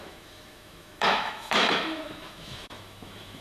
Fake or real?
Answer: fake